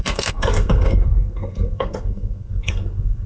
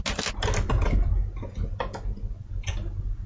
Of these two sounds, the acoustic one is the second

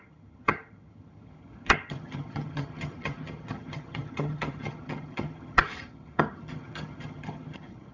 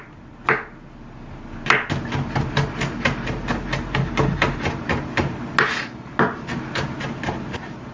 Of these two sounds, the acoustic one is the second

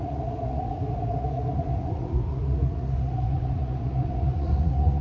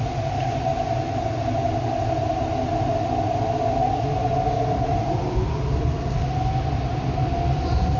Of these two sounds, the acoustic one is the second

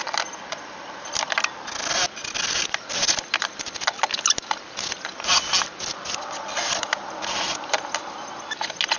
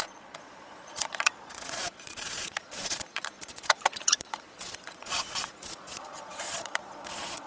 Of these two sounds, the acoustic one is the first